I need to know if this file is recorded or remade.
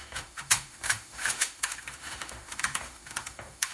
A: remade